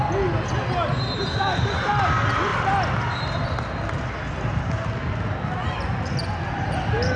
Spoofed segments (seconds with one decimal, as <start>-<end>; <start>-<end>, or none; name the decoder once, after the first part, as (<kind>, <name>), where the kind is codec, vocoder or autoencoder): none

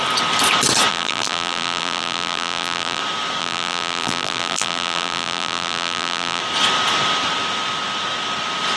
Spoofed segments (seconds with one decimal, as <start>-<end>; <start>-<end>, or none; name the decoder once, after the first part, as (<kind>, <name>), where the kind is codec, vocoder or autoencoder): 0.9-3.0 (vocoder, BigVGAN v2); 3.4-6.4

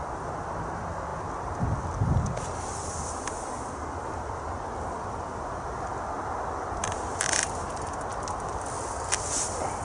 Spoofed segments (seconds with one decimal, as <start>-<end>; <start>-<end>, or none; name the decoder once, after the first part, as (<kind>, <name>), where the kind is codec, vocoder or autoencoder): none

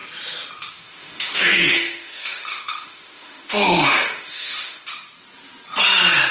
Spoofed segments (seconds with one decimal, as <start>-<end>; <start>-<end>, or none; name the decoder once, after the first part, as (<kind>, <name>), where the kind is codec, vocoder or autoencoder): 0.7-4.9 (autoencoder, DAC-VAE)

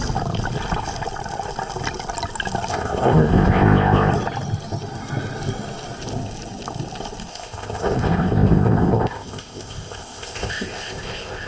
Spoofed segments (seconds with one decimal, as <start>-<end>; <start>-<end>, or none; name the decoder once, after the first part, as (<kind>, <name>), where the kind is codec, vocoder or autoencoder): 2.7-4.1 (codec, ZipCodec); 7.3-11.5

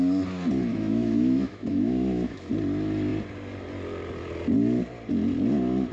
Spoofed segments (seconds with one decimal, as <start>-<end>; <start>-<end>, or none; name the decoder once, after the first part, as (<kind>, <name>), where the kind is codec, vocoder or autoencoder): 0.7-2.5 (autoencoder, DAC-VAE)